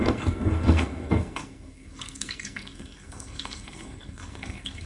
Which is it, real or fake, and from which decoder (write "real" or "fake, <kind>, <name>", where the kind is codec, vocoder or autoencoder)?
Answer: fake, codec, SNAC